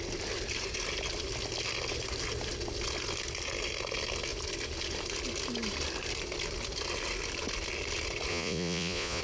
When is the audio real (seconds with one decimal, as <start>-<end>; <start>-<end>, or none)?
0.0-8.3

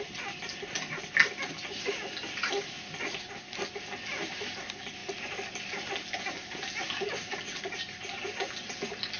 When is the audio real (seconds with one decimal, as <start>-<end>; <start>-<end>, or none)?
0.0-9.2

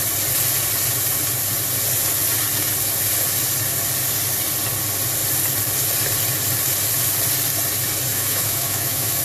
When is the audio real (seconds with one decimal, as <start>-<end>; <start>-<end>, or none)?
0.0-8.1

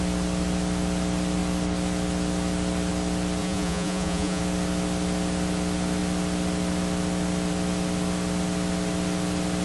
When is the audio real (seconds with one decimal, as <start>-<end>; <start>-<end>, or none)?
0.0-3.4; 4.4-9.6

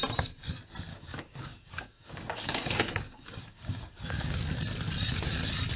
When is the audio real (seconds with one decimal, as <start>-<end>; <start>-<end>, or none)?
0.0-0.9; 4.4-5.8

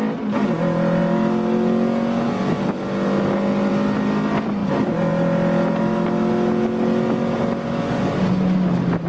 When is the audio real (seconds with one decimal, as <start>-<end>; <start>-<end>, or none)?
0.0-9.1

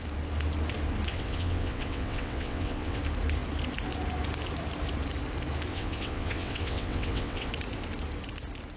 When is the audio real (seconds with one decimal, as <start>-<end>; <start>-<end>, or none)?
0.0-1.1; 3.0-5.7; 7.5-8.8

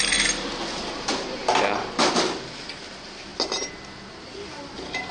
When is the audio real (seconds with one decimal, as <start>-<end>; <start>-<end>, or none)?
0.0-5.1